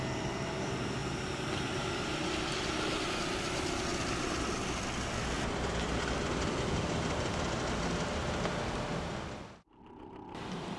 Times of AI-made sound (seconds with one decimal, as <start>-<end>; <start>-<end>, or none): 0.0-1.0; 5.8-7.3; 8.9-10.8